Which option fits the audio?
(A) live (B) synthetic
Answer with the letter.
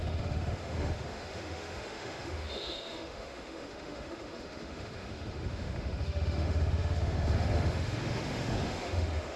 B